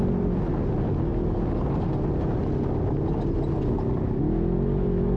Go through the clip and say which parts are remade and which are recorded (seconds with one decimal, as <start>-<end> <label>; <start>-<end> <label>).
0.0-5.2 recorded